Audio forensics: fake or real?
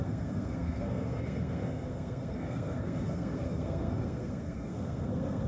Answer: fake